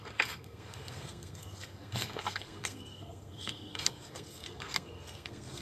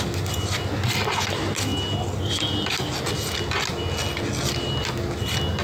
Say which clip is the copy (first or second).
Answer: first